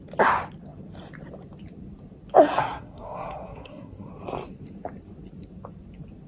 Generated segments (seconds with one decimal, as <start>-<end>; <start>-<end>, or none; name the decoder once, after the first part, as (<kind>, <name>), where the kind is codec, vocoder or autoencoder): 2.6-4.1 (codec, SNAC)